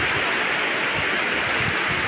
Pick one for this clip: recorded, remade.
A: recorded